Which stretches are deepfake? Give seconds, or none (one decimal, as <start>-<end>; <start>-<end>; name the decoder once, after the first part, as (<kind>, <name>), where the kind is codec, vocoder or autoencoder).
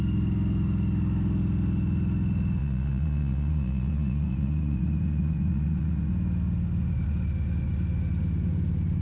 2.6-6.1 (vocoder, Vocos)